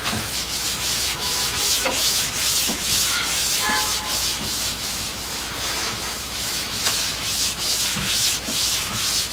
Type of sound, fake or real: fake